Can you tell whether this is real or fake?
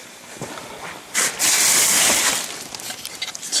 real